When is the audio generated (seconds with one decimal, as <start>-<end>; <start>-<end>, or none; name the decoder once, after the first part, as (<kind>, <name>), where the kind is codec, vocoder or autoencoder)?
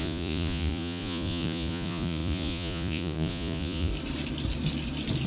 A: 0.0-3.9 (vocoder, Vocos)